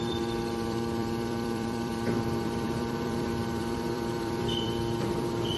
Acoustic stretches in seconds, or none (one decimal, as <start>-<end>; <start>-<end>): none

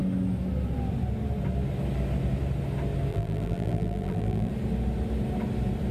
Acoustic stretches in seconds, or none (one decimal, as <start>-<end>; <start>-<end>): 0.0-3.1; 4.5-5.9

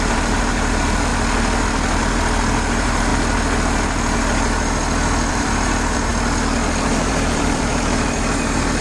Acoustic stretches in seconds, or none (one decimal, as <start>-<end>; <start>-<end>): 1.1-2.0; 3.1-5.3; 6.1-6.7

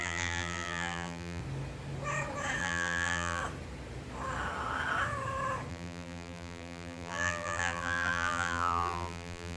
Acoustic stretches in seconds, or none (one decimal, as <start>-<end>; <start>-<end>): 1.4-2.6; 3.4-5.7

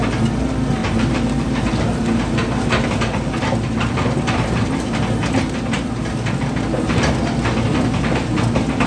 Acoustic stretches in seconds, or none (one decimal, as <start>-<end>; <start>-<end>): 0.0-0.8; 5.0-8.9

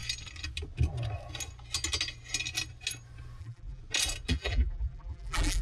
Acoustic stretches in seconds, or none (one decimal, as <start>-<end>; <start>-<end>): 0.0-3.4; 3.8-4.3

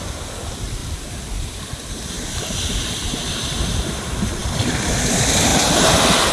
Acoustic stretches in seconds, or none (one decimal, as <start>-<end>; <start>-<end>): 0.0-0.8; 2.1-4.4; 5.0-6.3

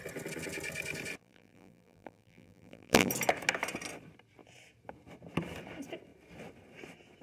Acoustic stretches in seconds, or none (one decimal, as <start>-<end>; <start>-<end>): 0.0-1.2; 3.1-7.2